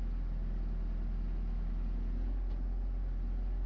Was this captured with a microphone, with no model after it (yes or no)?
yes